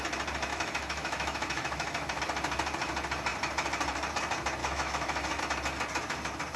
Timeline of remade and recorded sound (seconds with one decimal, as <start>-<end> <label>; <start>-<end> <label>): 0.0-0.5 recorded; 0.5-2.2 remade; 2.2-4.6 recorded; 4.6-5.4 remade; 5.4-6.6 recorded